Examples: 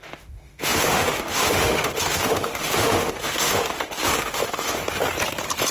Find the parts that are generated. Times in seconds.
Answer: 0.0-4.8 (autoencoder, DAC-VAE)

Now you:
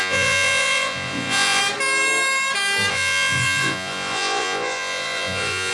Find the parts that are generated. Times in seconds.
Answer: 0.0-1.6 (vocoder, Vocos); 2.9-5.7

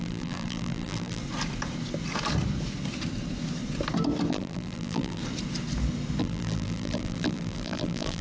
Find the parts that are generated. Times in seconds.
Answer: 0.0-1.2 (vocoder, BigVGAN v2); 4.3-5.2; 6.2-8.2